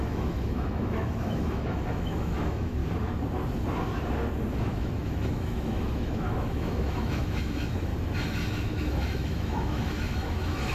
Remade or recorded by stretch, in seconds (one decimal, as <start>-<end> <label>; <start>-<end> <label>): 0.0-2.8 remade; 2.8-4.6 recorded; 4.6-7.9 remade; 7.9-8.5 recorded; 8.5-10.7 remade